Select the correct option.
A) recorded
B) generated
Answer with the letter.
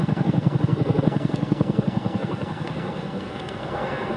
B